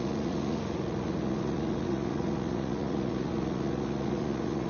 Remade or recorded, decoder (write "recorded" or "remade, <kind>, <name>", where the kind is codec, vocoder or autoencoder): remade, vocoder, Vocos